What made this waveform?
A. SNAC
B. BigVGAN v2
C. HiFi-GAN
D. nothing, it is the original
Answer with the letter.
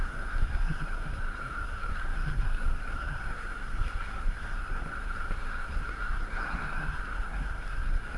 A